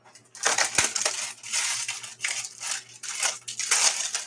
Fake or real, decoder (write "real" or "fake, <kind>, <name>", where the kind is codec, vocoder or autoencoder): real